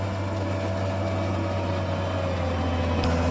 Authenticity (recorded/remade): recorded